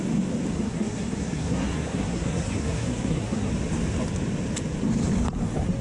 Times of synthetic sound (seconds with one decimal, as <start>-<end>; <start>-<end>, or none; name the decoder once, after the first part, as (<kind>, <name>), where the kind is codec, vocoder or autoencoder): 0.5-3.5 (codec, SNAC)